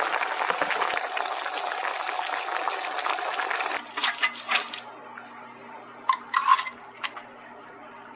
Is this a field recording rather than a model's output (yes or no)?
yes